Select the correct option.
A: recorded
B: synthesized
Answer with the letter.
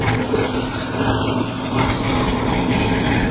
A